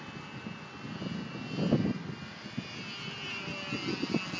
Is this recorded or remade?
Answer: recorded